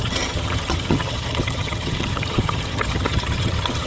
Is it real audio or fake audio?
fake